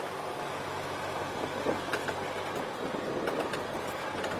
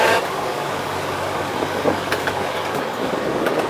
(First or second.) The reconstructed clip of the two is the second